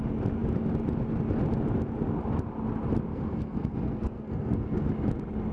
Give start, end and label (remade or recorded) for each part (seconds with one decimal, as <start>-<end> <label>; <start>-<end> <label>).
0.0-3.1 recorded; 3.1-4.9 remade; 4.9-5.5 recorded